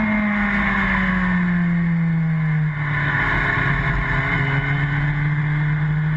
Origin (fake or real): real